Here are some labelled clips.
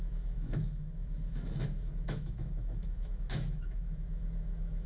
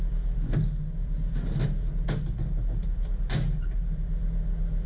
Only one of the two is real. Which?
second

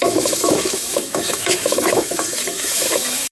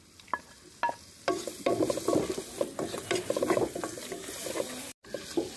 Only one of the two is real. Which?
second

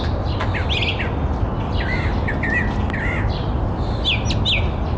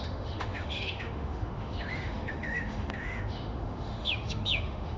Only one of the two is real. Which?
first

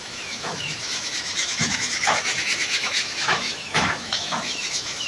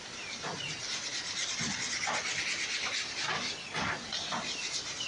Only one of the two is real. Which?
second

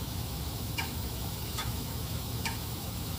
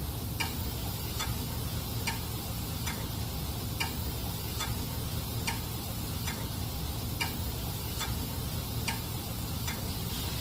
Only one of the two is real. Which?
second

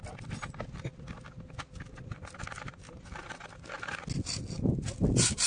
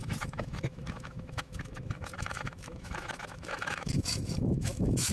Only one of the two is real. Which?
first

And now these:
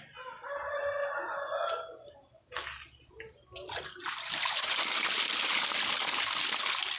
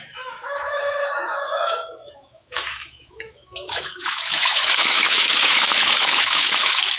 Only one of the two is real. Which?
first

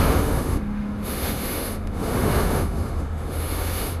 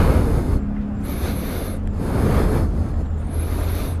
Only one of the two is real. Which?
second